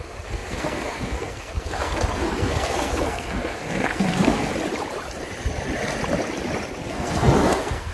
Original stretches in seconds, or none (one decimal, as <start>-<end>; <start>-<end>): 4.5-6.9